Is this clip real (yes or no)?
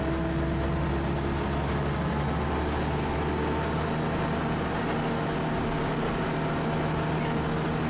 yes